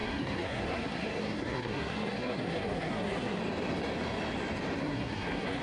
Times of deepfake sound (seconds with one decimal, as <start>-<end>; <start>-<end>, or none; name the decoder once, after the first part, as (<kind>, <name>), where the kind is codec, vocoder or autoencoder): 0.0-3.4 (codec, SNAC); 4.8-5.6

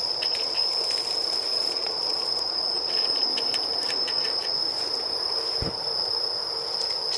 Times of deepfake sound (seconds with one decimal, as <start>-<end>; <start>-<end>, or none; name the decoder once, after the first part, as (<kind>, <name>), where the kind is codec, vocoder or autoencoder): 0.0-0.6 (vocoder, Vocos); 1.5-3.3; 3.9-4.6

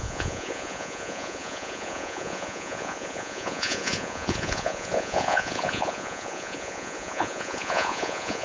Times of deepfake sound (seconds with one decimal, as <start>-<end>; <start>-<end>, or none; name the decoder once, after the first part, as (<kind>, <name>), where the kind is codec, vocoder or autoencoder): 0.0-8.4 (vocoder, Vocos)

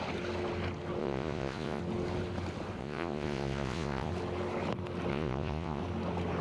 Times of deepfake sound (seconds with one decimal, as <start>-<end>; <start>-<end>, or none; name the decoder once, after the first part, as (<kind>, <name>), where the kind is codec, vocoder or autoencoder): 1.0-1.8 (vocoder, Vocos); 2.8-4.1; 5.1-5.8

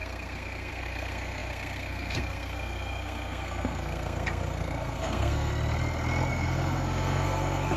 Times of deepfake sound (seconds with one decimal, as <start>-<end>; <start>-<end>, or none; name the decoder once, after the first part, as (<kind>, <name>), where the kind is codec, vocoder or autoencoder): 0.0-5.5 (codec, SNAC); 6.3-7.8